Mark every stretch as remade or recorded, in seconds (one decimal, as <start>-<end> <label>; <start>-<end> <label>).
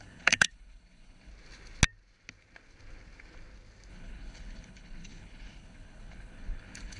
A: 0.0-1.3 remade; 1.3-3.9 recorded; 3.9-7.0 remade